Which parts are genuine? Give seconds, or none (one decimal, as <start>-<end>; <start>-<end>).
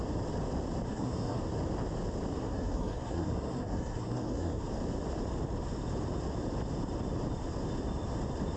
0.0-0.9; 1.4-2.4; 4.6-8.6